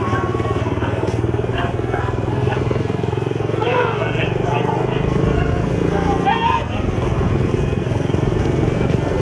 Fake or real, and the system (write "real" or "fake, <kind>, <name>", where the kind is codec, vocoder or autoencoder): fake, codec, SNAC